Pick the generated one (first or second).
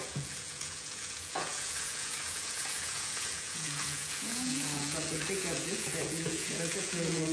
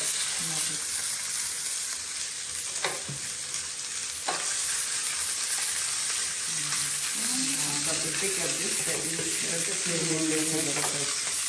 first